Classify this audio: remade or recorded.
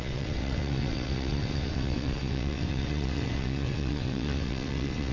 remade